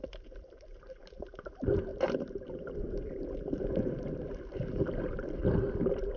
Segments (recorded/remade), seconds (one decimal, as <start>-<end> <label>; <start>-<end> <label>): 0.0-0.6 remade; 0.6-1.9 recorded; 1.9-5.4 remade; 5.4-6.2 recorded